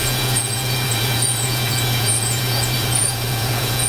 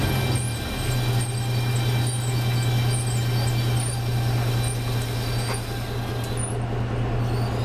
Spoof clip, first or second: first